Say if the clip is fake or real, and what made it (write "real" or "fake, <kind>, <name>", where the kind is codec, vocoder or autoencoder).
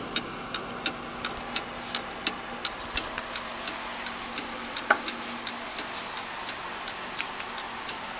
real